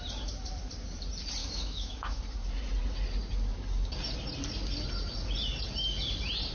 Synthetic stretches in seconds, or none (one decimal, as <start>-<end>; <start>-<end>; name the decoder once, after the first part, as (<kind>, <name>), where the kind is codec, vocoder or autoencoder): 1.4-2.2 (autoencoder, DAC-VAE)